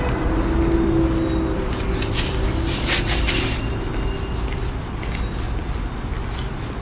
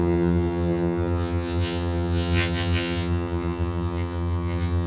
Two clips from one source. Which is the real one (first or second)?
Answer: first